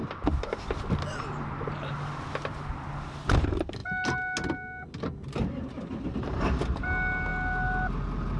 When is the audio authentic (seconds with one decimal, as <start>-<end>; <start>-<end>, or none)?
0.0-8.4